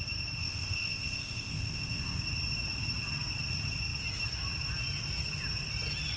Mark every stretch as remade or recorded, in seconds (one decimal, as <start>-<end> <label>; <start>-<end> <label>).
0.0-0.4 recorded; 0.4-2.2 remade; 2.2-6.2 recorded